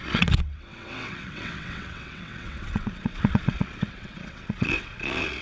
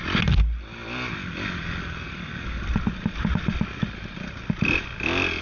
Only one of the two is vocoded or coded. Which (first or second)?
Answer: first